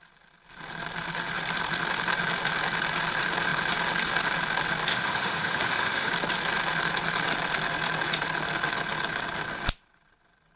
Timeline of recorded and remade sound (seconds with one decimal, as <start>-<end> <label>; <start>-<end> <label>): 0.0-4.9 recorded; 4.9-6.1 remade; 6.1-10.6 recorded